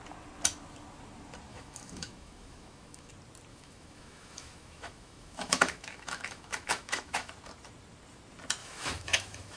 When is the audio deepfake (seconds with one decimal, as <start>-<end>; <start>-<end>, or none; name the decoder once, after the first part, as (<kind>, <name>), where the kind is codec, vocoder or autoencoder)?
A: 1.5-3.1 (autoencoder, DAC-VAE); 3.5-7.3; 8.6-9.6